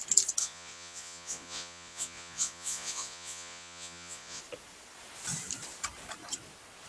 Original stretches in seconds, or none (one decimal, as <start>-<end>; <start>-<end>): 0.0-0.4; 4.4-6.9

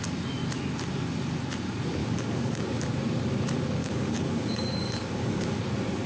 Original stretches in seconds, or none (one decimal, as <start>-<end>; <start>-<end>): 0.0-2.0; 2.7-3.8; 5.6-6.1

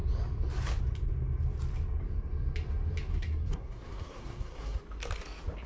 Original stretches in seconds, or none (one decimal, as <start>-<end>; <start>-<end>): 0.0-3.1; 4.8-5.7

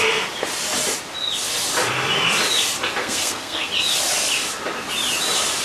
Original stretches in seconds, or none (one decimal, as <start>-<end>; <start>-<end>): 0.0-3.0; 3.7-5.6

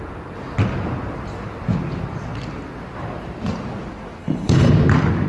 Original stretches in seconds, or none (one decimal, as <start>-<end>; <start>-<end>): 0.0-4.2; 4.7-5.3

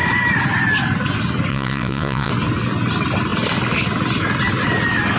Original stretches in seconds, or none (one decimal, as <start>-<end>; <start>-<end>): 0.0-1.5; 2.3-5.2

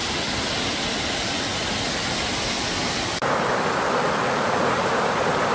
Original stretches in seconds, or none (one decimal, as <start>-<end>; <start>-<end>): 0.0-5.5